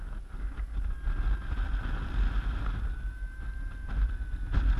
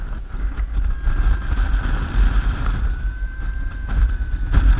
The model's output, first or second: second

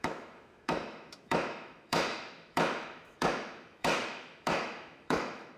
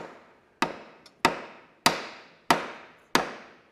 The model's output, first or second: first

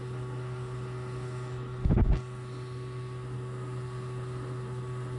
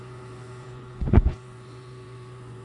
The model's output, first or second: second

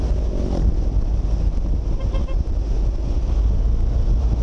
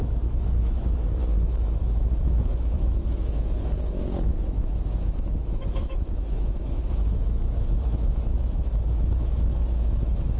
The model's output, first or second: second